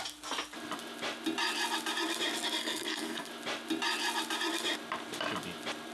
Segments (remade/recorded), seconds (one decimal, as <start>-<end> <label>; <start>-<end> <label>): 0.0-2.6 recorded; 2.6-3.3 remade; 3.3-5.9 recorded